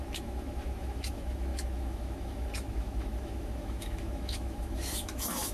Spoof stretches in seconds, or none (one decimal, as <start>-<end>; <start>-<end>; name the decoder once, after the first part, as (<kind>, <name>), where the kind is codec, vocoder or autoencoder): 0.0-5.5 (autoencoder, DAC-VAE)